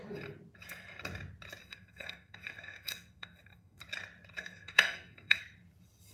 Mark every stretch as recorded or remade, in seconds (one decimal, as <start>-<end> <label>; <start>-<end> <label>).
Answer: 0.0-1.6 recorded; 1.6-3.8 remade; 3.8-4.4 recorded; 4.4-5.4 remade; 5.4-6.1 recorded